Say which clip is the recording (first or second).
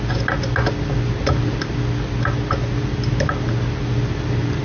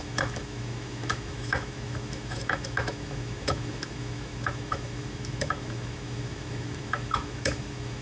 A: first